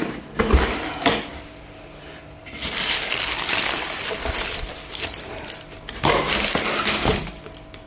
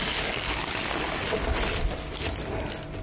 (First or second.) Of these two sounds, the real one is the second